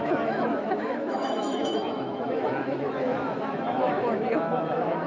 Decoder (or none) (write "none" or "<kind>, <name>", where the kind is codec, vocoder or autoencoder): autoencoder, DAC-VAE